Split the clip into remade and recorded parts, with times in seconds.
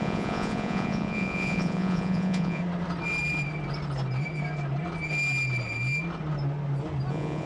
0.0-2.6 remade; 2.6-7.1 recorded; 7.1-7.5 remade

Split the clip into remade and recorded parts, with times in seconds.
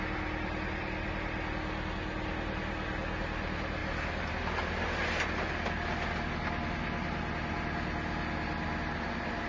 0.0-9.5 recorded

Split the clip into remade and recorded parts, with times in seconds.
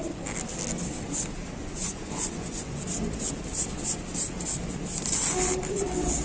0.0-1.6 recorded; 1.6-2.8 remade; 2.8-6.2 recorded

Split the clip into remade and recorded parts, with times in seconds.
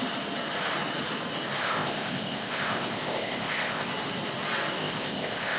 0.0-1.6 recorded; 1.6-3.9 remade; 3.9-4.8 recorded; 4.8-5.6 remade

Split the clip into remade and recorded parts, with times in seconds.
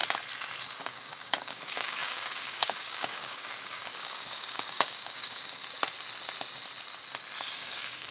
0.0-0.8 recorded; 0.8-5.6 remade; 5.6-7.5 recorded; 7.5-8.1 remade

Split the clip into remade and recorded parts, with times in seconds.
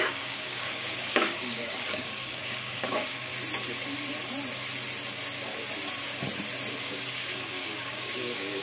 0.0-3.3 remade; 3.3-6.9 recorded; 6.9-8.6 remade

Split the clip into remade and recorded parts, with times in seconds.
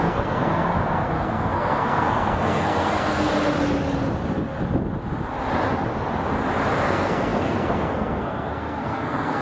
0.0-3.3 remade; 3.3-6.8 recorded; 6.8-9.4 remade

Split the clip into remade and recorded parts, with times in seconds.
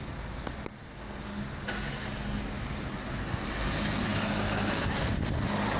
0.0-0.8 recorded; 0.8-1.4 remade; 1.4-5.8 recorded